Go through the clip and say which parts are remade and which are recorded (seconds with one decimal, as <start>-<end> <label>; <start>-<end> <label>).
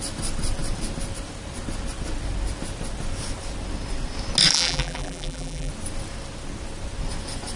0.0-4.5 recorded; 4.5-5.7 remade; 5.7-7.6 recorded